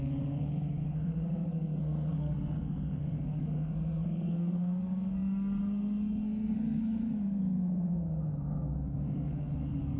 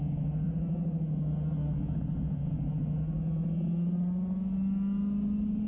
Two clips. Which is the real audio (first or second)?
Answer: second